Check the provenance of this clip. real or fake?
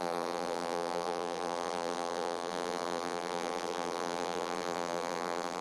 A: fake